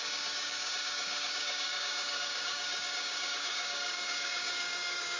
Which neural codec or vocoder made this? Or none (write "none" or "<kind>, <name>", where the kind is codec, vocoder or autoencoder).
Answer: codec, DAC